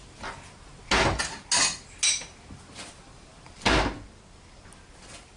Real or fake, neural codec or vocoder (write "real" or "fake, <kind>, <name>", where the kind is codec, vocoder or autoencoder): real